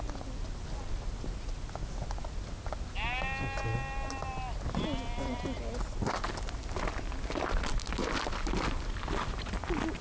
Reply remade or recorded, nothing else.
recorded